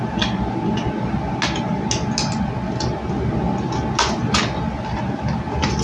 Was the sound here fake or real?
real